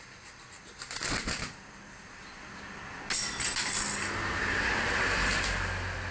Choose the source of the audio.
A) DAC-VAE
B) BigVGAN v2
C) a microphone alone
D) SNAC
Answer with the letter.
C